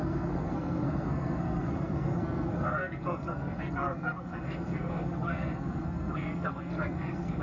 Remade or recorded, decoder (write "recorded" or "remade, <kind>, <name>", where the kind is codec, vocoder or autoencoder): remade, codec, SNAC